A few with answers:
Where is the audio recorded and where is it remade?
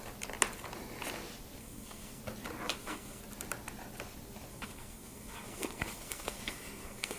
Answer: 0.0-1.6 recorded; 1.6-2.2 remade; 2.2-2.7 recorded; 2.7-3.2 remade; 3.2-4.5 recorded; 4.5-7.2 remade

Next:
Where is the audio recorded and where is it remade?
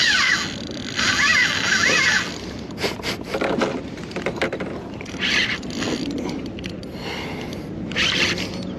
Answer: 0.0-8.8 recorded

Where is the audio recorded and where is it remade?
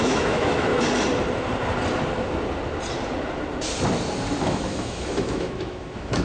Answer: 0.0-0.7 remade; 0.7-4.4 recorded; 4.4-6.2 remade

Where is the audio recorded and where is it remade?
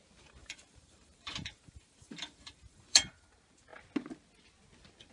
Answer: 0.0-0.4 recorded; 0.4-3.3 remade; 3.3-5.1 recorded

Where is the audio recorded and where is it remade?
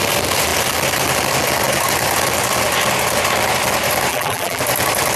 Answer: 0.0-4.1 recorded; 4.1-4.6 remade; 4.6-5.2 recorded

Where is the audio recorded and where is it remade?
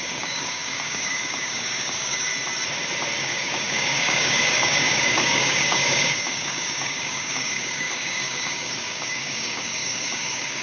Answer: 0.0-2.3 remade; 2.3-3.2 recorded; 3.2-10.6 remade